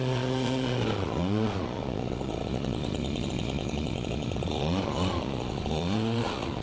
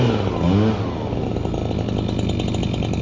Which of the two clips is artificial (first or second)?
first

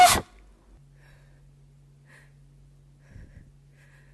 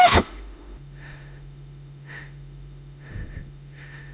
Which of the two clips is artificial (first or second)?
second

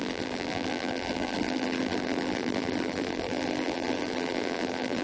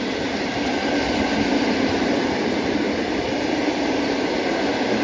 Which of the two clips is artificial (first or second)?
first